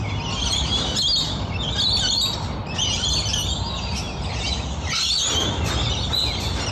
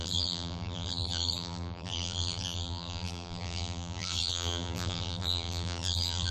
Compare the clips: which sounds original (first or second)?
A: first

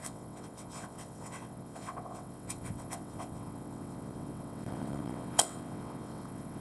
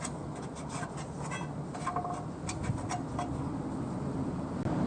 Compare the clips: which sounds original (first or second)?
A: second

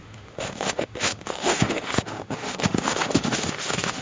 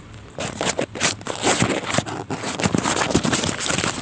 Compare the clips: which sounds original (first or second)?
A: second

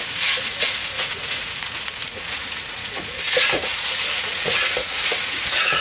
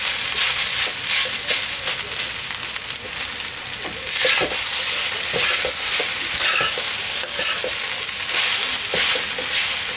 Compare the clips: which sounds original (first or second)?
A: second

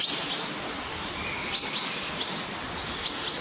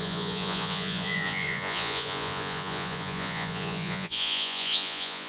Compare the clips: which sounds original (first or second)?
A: first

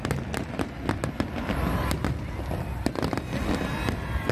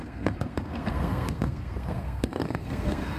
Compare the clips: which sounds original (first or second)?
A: first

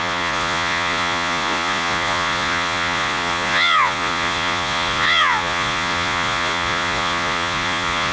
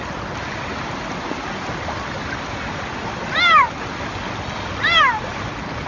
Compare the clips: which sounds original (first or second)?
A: second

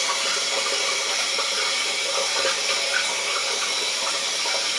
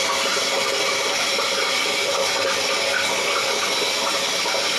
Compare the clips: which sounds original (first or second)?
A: second